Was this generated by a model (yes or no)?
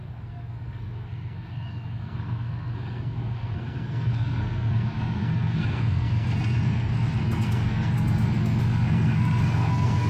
yes